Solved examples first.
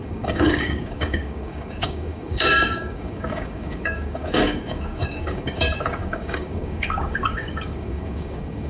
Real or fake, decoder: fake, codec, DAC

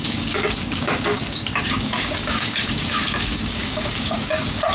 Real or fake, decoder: fake, codec, DAC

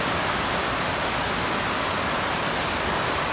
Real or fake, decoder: real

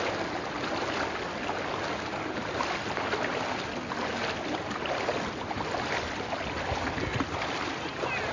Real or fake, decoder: real